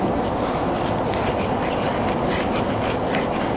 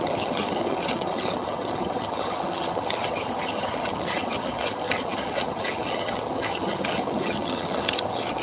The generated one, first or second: second